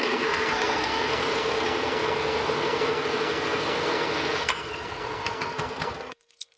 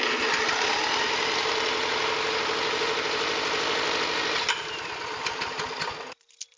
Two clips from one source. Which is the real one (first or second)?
second